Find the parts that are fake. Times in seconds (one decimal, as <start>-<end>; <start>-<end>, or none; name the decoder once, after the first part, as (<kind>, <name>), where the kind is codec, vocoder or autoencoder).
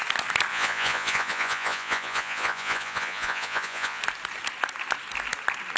0.5-4.0 (vocoder, Vocos)